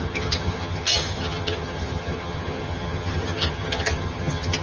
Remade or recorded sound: remade